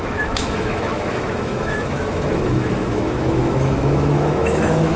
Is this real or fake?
fake